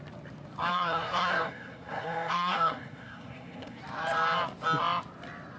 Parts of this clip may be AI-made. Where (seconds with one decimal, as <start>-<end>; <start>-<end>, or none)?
0.7-3.8